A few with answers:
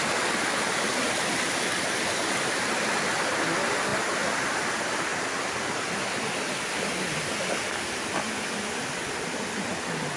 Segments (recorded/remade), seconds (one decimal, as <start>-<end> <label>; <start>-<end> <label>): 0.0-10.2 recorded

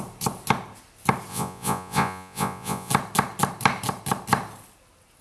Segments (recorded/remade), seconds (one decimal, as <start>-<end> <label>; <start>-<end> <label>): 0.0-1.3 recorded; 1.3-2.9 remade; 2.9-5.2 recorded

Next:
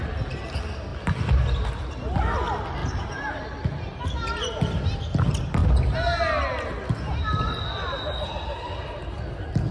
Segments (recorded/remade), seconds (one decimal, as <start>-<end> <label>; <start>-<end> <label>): 0.0-9.7 recorded